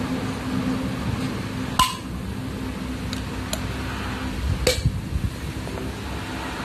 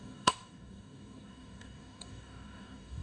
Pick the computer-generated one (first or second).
second